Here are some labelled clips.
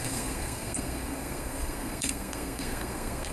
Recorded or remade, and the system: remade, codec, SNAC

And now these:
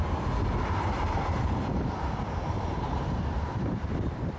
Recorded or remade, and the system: remade, vocoder, BigVGAN v2